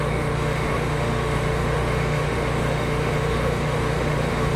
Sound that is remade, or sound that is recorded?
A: remade